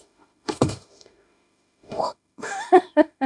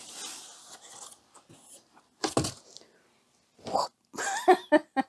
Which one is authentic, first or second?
second